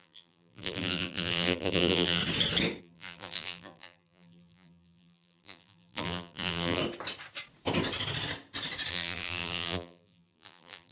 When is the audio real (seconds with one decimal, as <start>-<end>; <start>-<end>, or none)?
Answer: 2.2-2.8; 6.8-8.9